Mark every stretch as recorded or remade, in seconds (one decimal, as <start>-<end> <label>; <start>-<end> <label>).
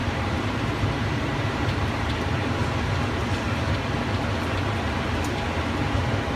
0.0-2.6 remade; 2.6-6.4 recorded